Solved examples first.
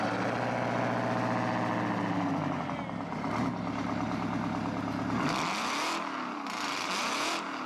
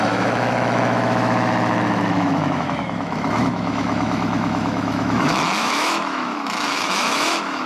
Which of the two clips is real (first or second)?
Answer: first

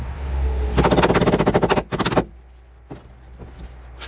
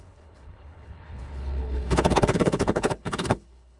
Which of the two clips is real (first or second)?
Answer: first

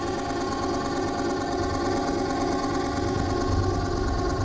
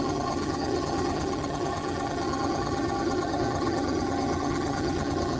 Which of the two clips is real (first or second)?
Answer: first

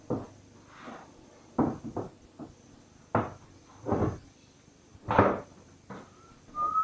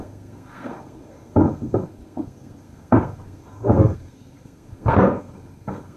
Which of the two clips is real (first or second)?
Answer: first